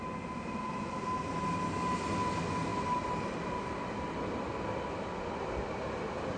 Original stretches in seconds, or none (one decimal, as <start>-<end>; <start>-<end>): 0.0-6.4